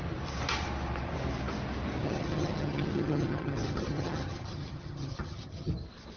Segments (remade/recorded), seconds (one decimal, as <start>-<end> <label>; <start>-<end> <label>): 0.0-2.0 recorded; 2.0-5.7 remade; 5.7-6.2 recorded